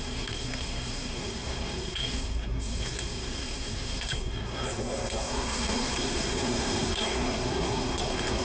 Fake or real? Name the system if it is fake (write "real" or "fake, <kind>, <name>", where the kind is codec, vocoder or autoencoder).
fake, codec, SNAC